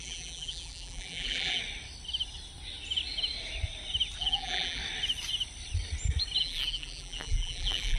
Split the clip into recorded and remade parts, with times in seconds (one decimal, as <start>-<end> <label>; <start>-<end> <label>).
0.0-1.6 remade; 1.6-4.2 recorded; 4.2-4.8 remade; 4.8-6.4 recorded; 6.4-8.0 remade